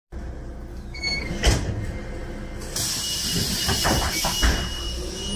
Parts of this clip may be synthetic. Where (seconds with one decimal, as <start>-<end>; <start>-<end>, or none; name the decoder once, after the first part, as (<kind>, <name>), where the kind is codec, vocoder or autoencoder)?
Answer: 0.7-1.3 (codec, DAC)